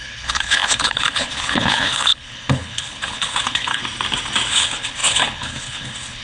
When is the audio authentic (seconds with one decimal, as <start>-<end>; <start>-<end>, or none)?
3.8-4.5